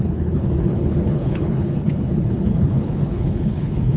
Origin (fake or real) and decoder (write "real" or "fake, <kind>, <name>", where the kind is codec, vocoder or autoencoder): fake, codec, HILCodec